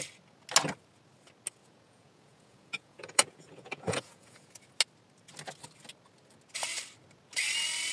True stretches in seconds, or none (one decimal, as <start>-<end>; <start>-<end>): 0.0-1.6; 4.5-7.9